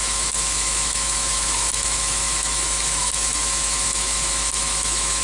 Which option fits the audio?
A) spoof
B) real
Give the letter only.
A